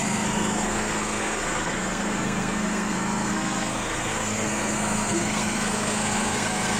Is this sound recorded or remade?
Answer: remade